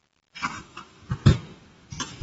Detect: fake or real fake